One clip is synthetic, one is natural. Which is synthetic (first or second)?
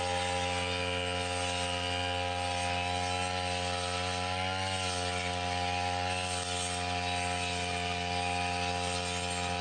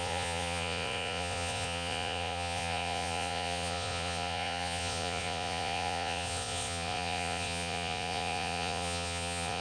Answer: second